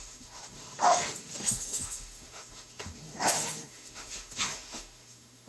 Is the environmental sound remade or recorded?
remade